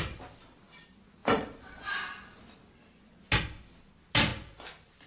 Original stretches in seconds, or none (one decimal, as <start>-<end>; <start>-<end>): 0.0-5.1